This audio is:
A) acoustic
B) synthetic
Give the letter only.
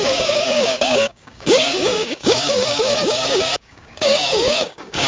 B